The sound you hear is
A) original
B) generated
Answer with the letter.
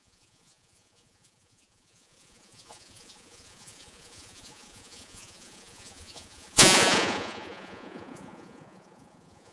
B